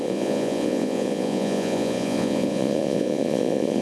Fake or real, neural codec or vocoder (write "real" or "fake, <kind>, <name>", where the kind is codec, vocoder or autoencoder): fake, vocoder, Vocos